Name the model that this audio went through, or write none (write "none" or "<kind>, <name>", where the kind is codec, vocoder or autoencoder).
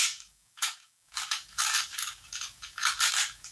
codec, DAC